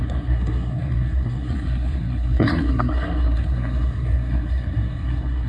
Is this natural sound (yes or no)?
no